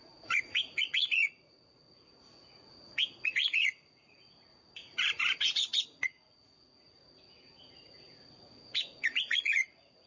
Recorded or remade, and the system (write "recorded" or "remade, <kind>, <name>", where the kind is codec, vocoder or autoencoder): remade, vocoder, Vocos